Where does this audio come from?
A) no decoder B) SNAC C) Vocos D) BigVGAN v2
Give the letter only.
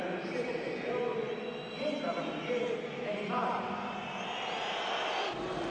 A